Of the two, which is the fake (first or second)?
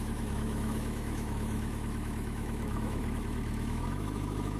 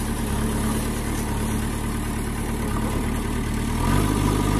first